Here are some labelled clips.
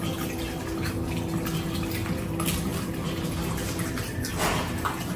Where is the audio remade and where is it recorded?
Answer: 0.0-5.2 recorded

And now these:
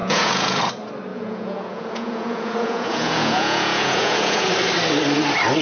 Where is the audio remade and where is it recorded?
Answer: 0.0-0.6 remade; 0.6-1.1 recorded; 1.1-4.5 remade; 4.5-5.6 recorded

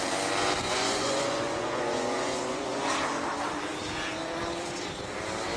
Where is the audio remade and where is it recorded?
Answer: 0.0-0.6 recorded; 0.6-2.9 remade; 2.9-5.6 recorded

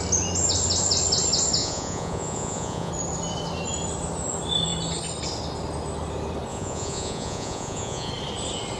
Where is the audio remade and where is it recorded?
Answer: 0.0-1.6 recorded; 1.6-2.9 remade; 2.9-6.5 recorded; 6.5-8.1 remade; 8.1-8.8 recorded

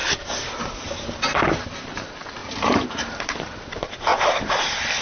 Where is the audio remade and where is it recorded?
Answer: 0.0-2.4 recorded; 2.4-3.2 remade; 3.2-4.1 recorded; 4.1-5.0 remade

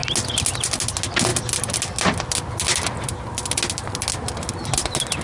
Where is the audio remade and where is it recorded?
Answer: 0.0-5.2 recorded

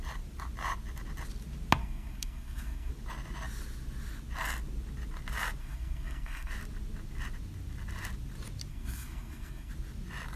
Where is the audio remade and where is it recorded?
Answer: 0.0-1.8 recorded; 1.8-2.9 remade; 2.9-5.6 recorded; 5.6-6.5 remade; 6.5-8.7 recorded; 8.7-9.7 remade; 9.7-10.4 recorded

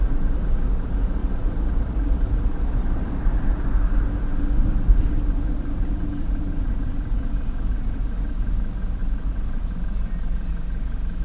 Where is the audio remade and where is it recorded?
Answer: 0.0-1.2 recorded; 1.2-4.0 remade; 4.0-5.5 recorded; 5.5-6.4 remade; 6.4-9.0 recorded; 9.0-10.5 remade; 10.5-11.2 recorded